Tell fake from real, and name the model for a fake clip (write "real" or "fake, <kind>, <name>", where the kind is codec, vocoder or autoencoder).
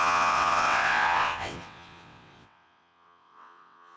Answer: fake, vocoder, WaveNeXt